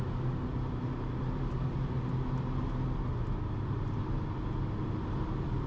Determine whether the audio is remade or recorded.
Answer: recorded